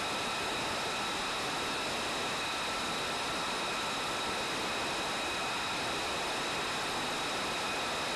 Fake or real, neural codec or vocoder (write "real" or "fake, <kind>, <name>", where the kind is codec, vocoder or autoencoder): real